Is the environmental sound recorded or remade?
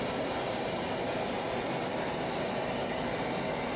recorded